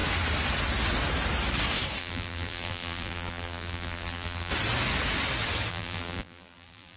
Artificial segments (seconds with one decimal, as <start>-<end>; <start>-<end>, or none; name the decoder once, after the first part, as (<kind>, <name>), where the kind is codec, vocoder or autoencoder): 2.0-4.5 (vocoder, BigVGAN v2); 5.7-7.0